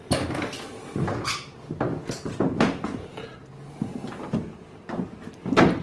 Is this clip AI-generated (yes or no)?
no